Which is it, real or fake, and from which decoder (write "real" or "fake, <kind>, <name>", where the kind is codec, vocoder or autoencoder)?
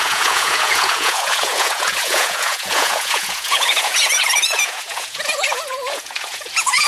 fake, vocoder, Vocos